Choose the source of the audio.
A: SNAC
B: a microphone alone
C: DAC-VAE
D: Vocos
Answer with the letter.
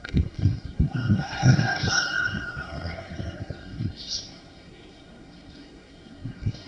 A